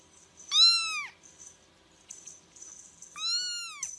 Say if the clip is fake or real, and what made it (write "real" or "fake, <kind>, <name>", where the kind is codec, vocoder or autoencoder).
real